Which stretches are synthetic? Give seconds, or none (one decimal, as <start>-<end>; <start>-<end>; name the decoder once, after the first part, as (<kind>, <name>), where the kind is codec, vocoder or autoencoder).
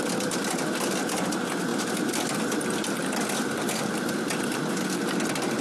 none